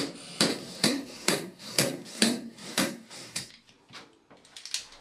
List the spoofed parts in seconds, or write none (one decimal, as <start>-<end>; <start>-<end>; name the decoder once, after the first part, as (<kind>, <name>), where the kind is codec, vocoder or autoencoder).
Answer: 0.5-3.5 (codec, SNAC)